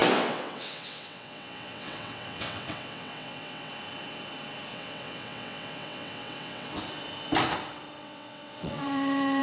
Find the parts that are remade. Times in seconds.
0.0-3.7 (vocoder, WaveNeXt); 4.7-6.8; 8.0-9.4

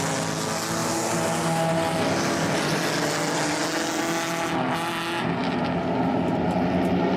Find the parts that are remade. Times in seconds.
none

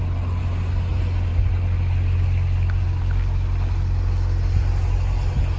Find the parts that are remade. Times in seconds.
none

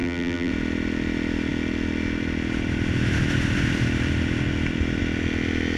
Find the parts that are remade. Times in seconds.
0.0-0.5 (vocoder, BigVGAN v2)